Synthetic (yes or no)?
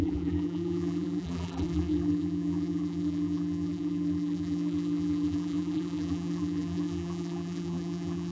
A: yes